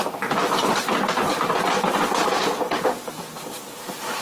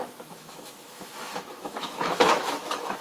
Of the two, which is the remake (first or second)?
second